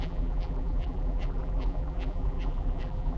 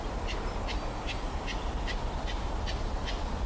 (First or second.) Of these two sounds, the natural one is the second